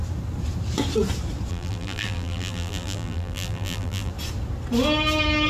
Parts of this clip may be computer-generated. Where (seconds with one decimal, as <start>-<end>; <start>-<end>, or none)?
1.5-4.1